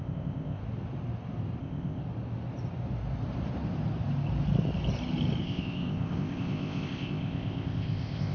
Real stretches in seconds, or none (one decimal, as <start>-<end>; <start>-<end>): 0.6-1.6; 2.0-5.4